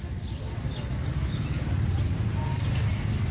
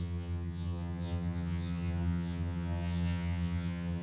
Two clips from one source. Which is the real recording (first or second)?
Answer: first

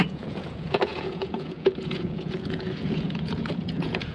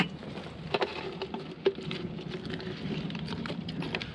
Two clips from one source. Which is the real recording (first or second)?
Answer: second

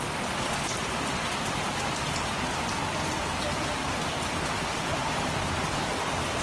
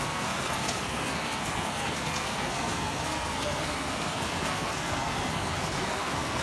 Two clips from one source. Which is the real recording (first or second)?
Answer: first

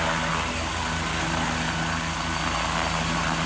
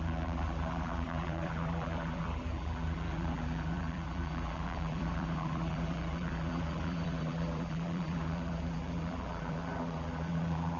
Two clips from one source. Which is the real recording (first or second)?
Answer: first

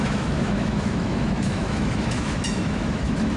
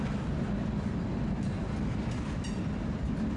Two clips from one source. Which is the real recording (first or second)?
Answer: second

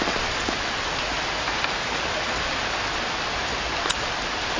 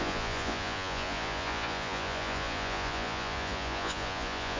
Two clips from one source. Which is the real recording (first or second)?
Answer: first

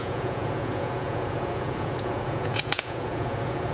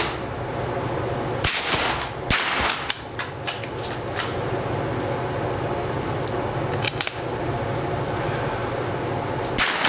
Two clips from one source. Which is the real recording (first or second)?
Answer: second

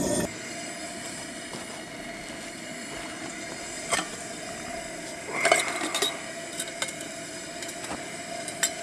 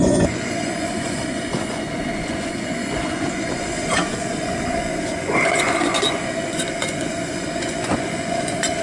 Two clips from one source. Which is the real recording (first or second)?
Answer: first